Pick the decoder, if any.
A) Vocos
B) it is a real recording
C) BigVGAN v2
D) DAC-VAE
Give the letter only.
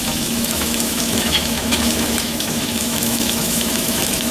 D